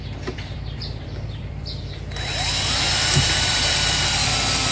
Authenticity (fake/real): fake